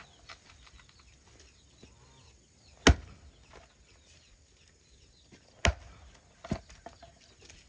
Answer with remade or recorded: recorded